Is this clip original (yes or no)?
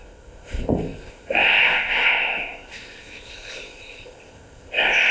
no